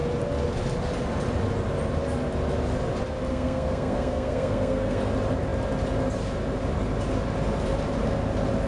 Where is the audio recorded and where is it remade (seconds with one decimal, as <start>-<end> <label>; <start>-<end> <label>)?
0.0-3.3 recorded; 3.3-5.0 remade; 5.0-8.7 recorded